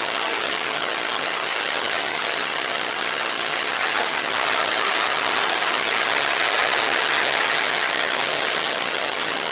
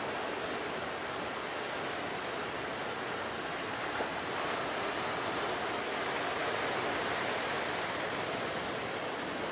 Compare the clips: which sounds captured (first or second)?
second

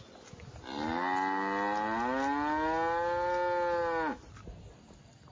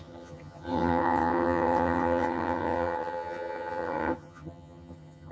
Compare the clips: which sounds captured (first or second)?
first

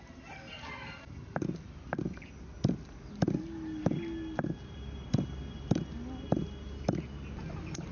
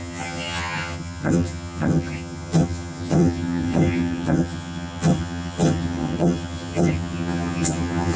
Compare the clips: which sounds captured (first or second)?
first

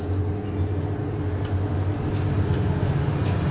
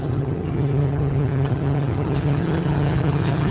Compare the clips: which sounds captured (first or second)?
first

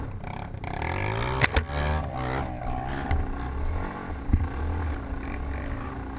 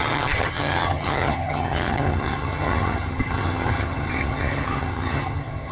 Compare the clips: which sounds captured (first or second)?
first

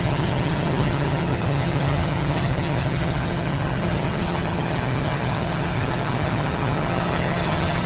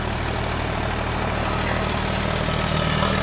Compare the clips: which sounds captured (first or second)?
second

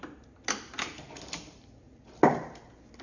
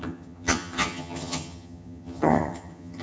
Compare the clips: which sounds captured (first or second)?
first